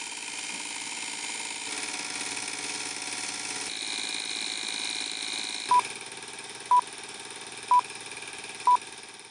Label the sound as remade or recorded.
recorded